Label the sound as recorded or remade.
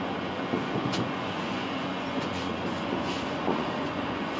remade